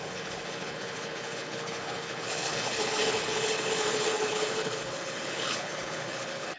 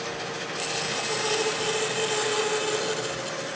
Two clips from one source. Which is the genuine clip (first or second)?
second